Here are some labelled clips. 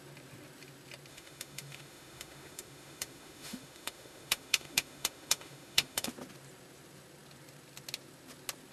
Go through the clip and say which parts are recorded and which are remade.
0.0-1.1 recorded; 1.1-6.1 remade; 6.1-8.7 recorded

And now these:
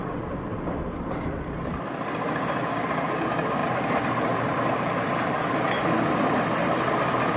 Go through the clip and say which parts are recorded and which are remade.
0.0-3.6 recorded; 3.6-5.4 remade; 5.4-7.4 recorded

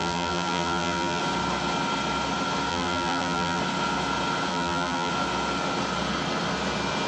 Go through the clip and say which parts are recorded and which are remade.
0.0-1.2 remade; 1.2-2.7 recorded; 2.7-3.6 remade; 3.6-4.5 recorded; 4.5-5.1 remade; 5.1-7.1 recorded

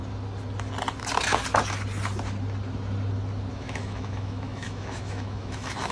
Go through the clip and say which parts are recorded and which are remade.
0.0-3.5 recorded; 3.5-5.9 remade

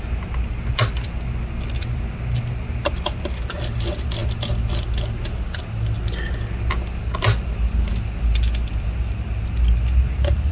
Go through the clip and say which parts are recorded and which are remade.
0.0-10.5 recorded

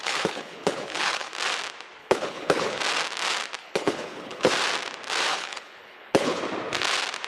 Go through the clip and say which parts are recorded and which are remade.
0.0-1.3 remade; 1.3-2.0 recorded; 2.0-2.8 remade; 2.8-3.6 recorded; 3.6-4.5 remade; 4.5-5.3 recorded; 5.3-6.4 remade; 6.4-7.3 recorded

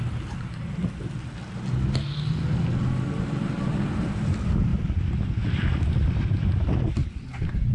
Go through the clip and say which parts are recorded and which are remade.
0.0-7.7 recorded

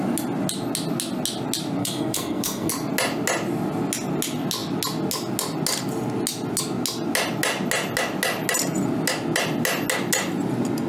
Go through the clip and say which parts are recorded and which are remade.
0.0-1.8 recorded; 1.8-2.7 remade; 2.7-10.9 recorded